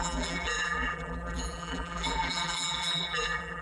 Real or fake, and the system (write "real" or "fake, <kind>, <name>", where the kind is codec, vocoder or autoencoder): fake, vocoder, BigVGAN v2